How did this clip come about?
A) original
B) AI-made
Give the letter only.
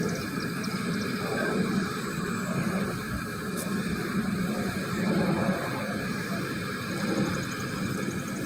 B